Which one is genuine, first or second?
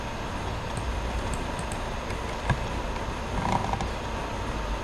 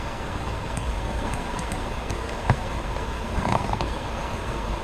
first